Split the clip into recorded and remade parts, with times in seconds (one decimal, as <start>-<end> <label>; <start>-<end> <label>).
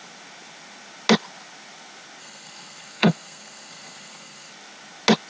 0.0-2.2 recorded; 2.2-4.5 remade; 4.5-5.3 recorded